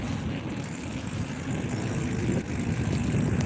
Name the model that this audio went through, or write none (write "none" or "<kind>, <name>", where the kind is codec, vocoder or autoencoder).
none